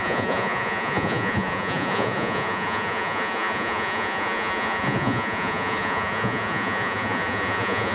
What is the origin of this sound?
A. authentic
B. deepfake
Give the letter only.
B